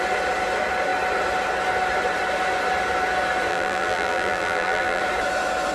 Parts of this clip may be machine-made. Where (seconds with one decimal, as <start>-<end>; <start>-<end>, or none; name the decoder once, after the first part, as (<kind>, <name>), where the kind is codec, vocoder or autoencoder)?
3.5-5.0 (vocoder, BigVGAN v2)